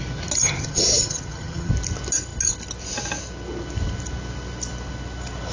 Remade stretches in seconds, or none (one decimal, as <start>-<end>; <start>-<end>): 0.4-1.7